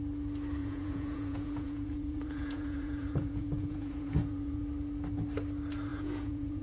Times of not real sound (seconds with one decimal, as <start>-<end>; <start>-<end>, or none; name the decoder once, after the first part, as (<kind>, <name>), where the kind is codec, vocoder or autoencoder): 0.6-4.6 (vocoder, Vocos); 5.9-6.6